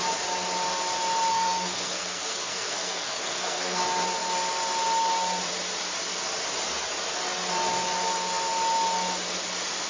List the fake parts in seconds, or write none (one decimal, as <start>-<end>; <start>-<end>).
1.3-3.8